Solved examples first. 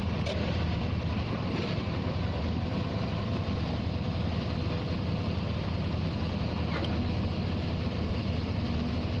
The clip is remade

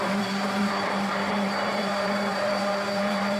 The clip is remade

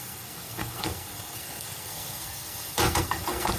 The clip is remade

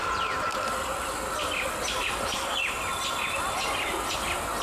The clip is recorded